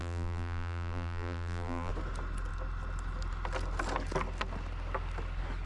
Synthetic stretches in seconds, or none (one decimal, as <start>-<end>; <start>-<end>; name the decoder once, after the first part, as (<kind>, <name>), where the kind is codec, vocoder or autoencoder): 0.0-1.9 (vocoder, BigVGAN v2)